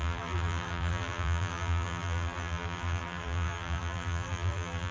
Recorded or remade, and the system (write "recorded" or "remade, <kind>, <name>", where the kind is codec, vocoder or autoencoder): remade, vocoder, BigVGAN v2